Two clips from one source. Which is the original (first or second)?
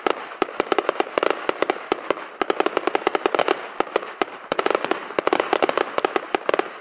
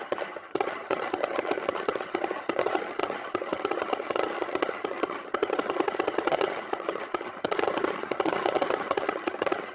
first